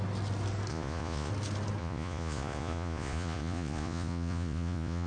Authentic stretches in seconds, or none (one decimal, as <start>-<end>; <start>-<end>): 0.0-0.7; 1.3-1.8